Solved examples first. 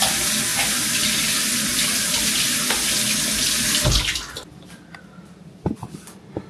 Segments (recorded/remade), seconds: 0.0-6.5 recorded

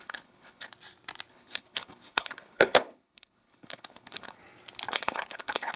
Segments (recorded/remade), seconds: 0.0-0.7 remade; 0.7-1.3 recorded; 1.3-4.4 remade; 4.4-4.9 recorded; 4.9-5.8 remade

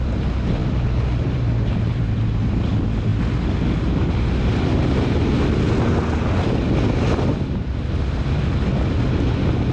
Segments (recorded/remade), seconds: 0.0-0.6 recorded; 0.6-2.0 remade; 2.0-9.7 recorded

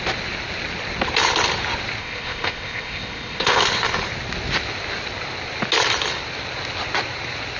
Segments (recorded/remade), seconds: 0.0-2.0 recorded; 2.0-3.6 remade; 3.6-7.6 recorded

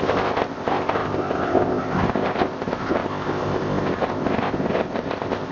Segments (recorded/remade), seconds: 0.0-5.5 remade

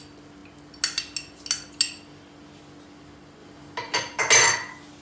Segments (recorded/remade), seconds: 0.0-5.0 recorded